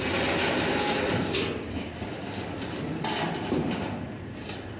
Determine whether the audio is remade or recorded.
recorded